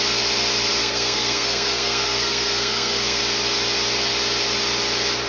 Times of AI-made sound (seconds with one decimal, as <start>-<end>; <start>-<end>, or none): 0.8-3.2